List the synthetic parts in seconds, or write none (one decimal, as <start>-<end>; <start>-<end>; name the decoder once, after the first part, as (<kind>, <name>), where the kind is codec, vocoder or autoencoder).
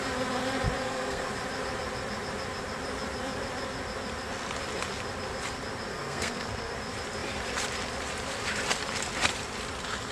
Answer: 0.8-1.3 (codec, SNAC); 5.9-6.7